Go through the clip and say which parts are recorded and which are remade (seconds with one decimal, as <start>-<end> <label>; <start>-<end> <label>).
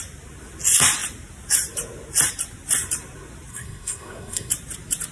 0.0-3.5 recorded; 3.5-4.5 remade; 4.5-5.1 recorded